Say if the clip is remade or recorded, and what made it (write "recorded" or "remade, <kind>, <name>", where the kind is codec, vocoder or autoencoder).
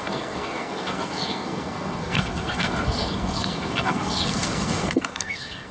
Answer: remade, codec, SNAC